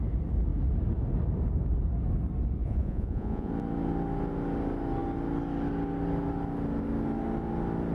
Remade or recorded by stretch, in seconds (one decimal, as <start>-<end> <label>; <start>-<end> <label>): 0.0-2.6 recorded; 2.6-3.5 remade; 3.5-7.9 recorded